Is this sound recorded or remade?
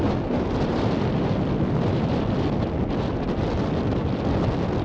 recorded